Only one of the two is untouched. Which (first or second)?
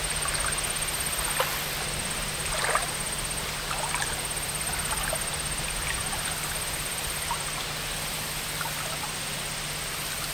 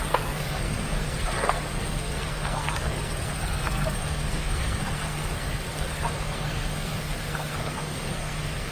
first